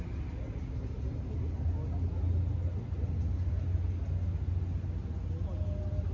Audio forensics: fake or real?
real